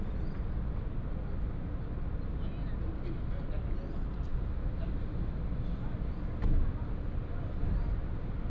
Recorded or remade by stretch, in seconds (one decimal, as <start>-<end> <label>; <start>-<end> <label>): 0.0-8.5 recorded